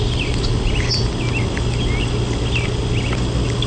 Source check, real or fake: real